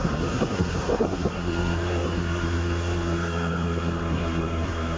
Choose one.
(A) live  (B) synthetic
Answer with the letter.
B